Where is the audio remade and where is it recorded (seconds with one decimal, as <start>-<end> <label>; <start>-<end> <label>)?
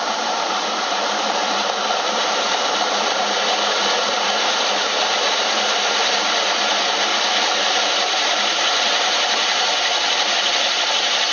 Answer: 0.0-7.1 remade; 7.1-7.8 recorded; 7.8-11.3 remade